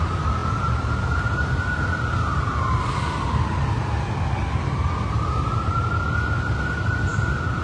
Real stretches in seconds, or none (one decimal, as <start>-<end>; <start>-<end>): 0.0-7.6